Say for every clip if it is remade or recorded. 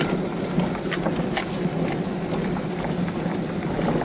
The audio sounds recorded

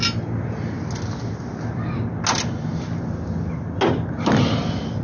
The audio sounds recorded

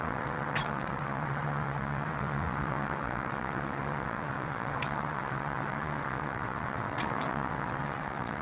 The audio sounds remade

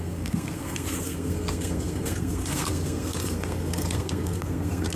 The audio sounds remade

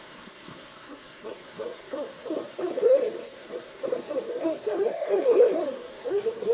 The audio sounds remade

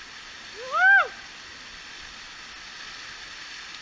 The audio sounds recorded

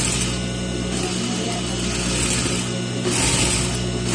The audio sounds recorded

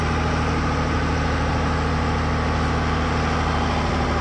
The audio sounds recorded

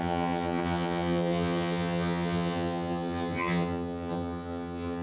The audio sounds remade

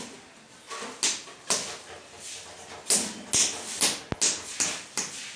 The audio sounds recorded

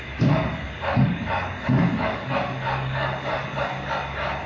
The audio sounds remade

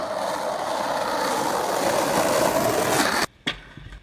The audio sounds recorded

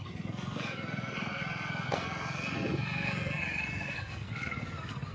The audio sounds remade